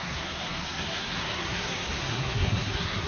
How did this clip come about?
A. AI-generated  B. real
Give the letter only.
A